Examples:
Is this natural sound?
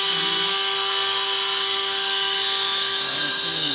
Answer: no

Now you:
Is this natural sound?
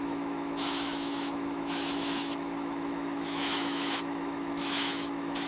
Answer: no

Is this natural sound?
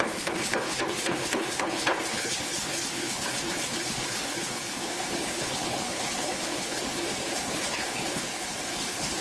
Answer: no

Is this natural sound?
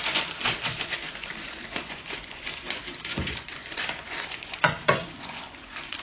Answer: no